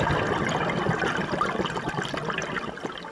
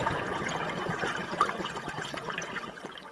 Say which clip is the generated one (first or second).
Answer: second